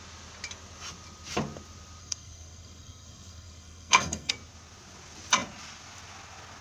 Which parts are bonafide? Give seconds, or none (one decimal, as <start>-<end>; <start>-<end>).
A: 0.0-2.0; 4.3-6.6